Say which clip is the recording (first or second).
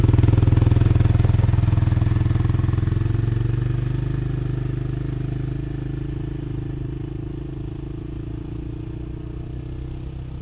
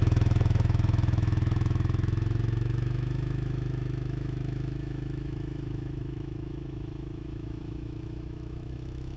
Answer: first